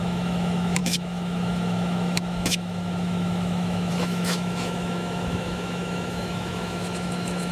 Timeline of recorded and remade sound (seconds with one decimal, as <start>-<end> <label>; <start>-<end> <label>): 0.0-7.5 remade